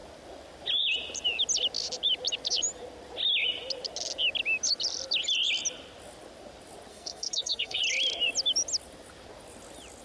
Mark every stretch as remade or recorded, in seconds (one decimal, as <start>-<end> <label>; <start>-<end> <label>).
0.0-6.9 recorded; 6.9-7.8 remade; 7.8-10.0 recorded